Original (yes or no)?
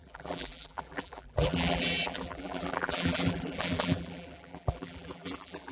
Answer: no